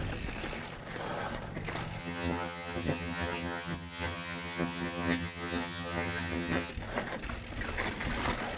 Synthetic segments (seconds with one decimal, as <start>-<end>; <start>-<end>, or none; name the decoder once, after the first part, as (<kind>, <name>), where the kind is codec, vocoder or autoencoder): 2.0-6.7 (vocoder, HiFi-GAN)